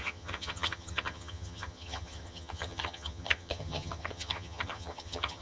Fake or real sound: fake